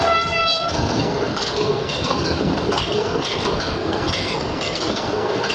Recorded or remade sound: remade